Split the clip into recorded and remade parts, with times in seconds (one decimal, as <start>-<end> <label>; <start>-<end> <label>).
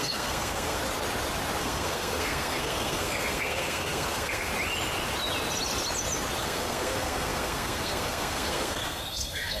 0.0-0.8 remade; 0.8-1.6 recorded; 1.6-4.5 remade; 4.5-6.4 recorded; 6.4-9.6 remade